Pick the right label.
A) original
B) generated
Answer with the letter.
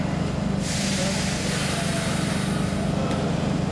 A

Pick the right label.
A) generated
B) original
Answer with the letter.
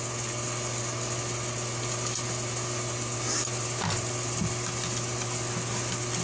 B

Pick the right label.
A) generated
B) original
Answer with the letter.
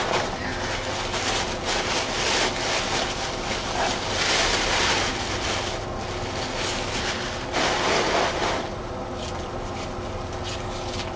B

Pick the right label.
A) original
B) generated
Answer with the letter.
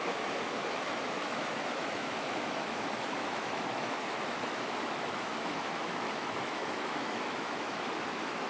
B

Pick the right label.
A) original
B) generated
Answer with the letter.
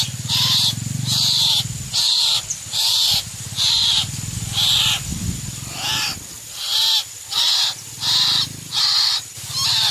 A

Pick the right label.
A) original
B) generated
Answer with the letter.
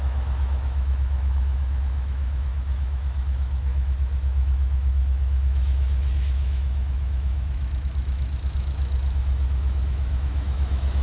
B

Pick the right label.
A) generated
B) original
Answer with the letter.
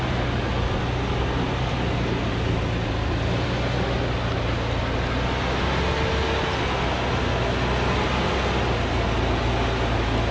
B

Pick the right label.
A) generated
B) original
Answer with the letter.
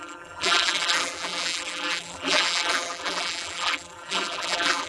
A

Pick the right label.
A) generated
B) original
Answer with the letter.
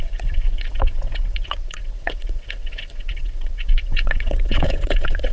A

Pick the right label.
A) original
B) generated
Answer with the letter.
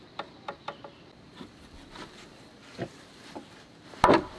B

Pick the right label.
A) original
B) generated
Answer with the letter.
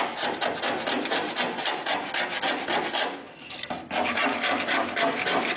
A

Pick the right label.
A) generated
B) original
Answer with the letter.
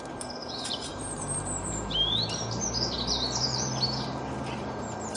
A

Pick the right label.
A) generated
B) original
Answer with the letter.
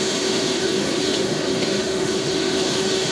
A